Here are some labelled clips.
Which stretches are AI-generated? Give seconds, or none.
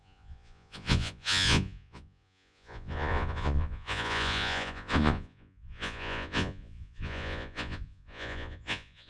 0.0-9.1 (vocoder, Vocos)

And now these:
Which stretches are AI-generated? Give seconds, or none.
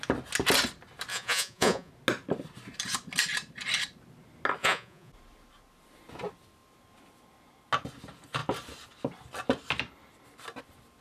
1.1-1.9 (vocoder, Vocos); 4.6-5.1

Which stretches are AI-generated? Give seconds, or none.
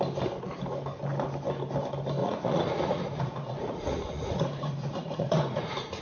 2.2-6.0 (vocoder, Vocos)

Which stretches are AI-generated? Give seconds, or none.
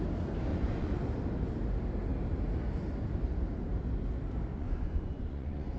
0.5-1.0 (vocoder, Vocos); 4.5-5.8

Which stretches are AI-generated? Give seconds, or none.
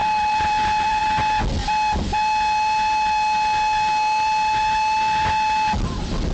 0.0-1.0 (vocoder, BigVGAN v2)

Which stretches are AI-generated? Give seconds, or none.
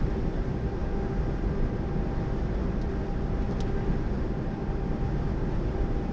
none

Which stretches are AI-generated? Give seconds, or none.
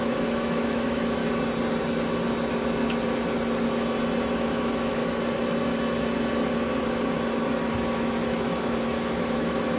0.0-1.2 (autoencoder, DAC-VAE); 4.2-5.0; 7.7-9.8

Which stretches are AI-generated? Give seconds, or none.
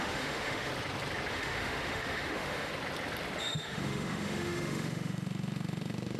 0.0-0.7 (autoencoder, DAC-VAE); 1.3-2.7; 3.4-6.2